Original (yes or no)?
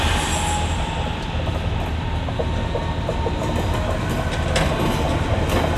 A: yes